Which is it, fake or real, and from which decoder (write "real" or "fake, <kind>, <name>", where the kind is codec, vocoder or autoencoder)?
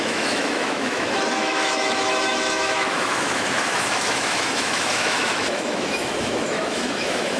fake, autoencoder, DAC-VAE